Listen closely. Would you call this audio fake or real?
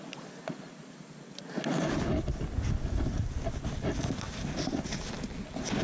real